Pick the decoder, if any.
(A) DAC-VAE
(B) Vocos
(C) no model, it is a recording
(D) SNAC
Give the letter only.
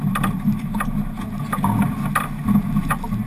C